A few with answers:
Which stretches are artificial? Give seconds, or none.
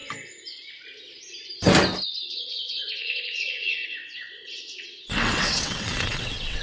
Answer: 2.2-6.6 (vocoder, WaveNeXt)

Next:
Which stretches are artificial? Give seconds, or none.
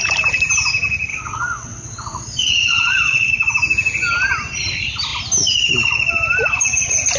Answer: 1.1-3.3 (vocoder, WaveNeXt)